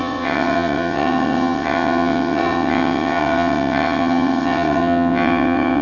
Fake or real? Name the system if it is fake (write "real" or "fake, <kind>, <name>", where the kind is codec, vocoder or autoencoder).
fake, vocoder, WaveNeXt